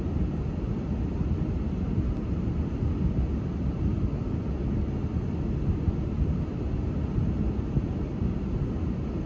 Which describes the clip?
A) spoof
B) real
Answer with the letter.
B